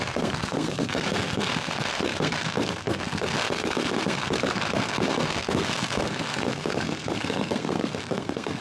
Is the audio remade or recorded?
remade